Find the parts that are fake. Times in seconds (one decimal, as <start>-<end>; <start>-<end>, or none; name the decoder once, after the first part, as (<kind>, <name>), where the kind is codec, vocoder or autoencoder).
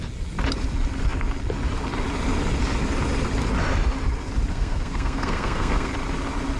4.5-5.9 (codec, SNAC)